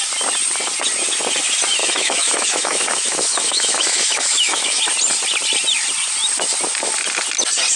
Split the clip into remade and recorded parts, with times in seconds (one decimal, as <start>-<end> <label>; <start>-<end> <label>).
0.0-1.8 recorded; 1.8-4.8 remade; 4.8-7.8 recorded